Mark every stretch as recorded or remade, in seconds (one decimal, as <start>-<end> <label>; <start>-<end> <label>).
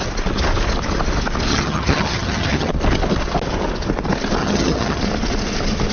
0.0-1.5 recorded; 1.5-2.7 remade; 2.7-4.4 recorded; 4.4-5.0 remade; 5.0-5.9 recorded